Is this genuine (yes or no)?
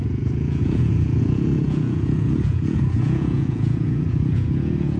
no